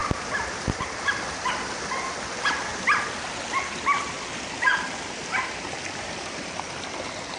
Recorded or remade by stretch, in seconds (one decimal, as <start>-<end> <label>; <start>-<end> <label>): 0.0-7.4 recorded